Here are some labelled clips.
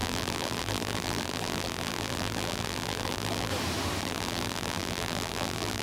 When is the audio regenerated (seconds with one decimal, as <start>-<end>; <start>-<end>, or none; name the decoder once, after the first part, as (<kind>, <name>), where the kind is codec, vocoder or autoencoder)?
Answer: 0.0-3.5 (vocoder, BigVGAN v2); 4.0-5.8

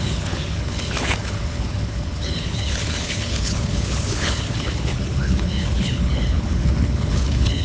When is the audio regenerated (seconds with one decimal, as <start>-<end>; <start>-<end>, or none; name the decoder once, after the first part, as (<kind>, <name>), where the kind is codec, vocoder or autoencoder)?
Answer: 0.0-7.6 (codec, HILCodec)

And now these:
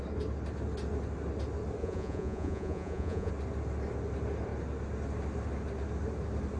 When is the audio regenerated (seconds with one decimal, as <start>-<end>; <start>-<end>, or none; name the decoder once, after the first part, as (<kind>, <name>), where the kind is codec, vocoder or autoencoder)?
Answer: 1.8-3.3 (vocoder, Vocos)

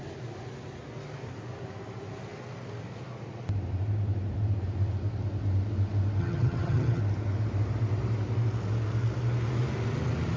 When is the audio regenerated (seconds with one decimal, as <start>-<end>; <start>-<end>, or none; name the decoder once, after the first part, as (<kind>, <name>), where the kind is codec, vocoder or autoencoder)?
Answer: 6.2-7.0 (vocoder, HiFi-GAN)

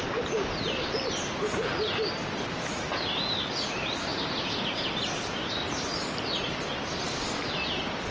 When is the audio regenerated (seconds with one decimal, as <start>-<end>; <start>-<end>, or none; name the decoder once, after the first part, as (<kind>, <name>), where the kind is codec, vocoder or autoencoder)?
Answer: none